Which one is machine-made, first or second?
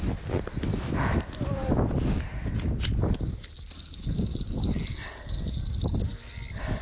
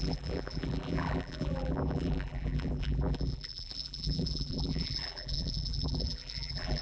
second